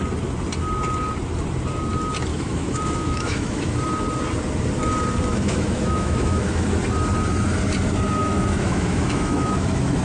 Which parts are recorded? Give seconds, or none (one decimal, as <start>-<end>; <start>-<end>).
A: 0.0-2.3; 3.7-5.3; 6.8-8.2